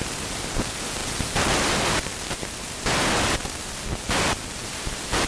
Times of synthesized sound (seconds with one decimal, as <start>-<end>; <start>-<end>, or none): none